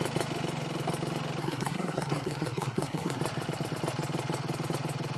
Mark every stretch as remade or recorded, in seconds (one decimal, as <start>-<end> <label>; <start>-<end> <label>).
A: 0.0-1.4 recorded; 1.4-3.2 remade; 3.2-5.2 recorded